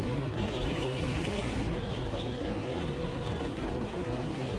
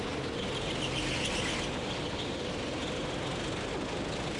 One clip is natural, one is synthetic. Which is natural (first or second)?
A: second